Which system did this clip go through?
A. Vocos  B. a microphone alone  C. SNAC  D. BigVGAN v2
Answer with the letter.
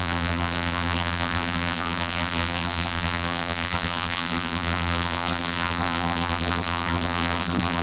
D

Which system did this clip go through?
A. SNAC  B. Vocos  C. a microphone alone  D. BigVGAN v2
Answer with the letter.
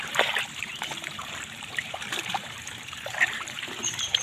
D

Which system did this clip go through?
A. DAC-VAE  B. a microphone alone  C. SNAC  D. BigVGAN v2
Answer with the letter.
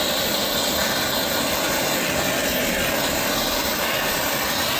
B